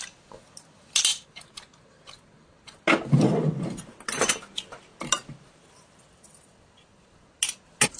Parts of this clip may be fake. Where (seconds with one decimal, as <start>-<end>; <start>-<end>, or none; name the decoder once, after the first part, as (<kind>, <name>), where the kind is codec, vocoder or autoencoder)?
none